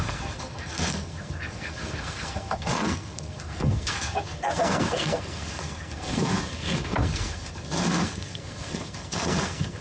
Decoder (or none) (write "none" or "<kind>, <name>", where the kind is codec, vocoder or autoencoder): codec, SNAC